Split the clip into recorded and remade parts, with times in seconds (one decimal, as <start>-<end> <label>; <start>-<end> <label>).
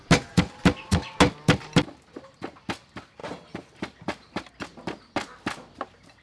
0.0-3.2 recorded; 3.2-4.5 remade; 4.5-6.2 recorded